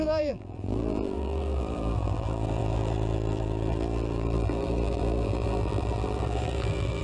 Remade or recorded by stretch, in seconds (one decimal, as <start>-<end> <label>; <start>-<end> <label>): 0.0-7.0 remade